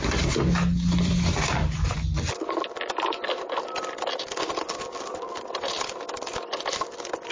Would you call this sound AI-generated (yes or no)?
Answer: no